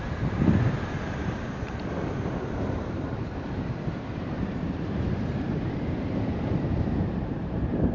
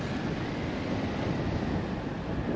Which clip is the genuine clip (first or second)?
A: second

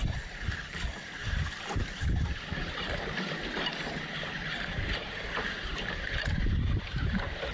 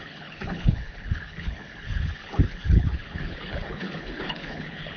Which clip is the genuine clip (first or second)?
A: first